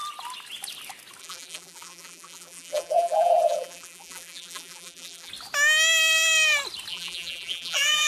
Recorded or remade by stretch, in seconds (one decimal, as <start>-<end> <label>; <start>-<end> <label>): 0.0-1.2 recorded; 1.2-5.3 remade; 5.3-6.9 recorded; 6.9-8.1 remade